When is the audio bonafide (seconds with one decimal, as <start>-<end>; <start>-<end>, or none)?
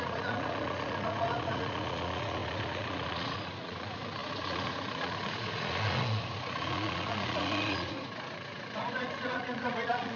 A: none